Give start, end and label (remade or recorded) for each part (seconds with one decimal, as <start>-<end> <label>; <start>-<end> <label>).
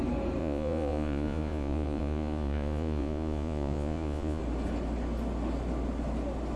0.0-0.4 recorded; 0.4-4.4 remade; 4.4-6.6 recorded